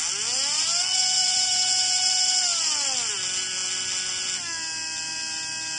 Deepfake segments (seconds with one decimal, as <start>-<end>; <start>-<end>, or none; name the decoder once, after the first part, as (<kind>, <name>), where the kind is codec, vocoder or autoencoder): 1.2-2.1 (vocoder, BigVGAN v2)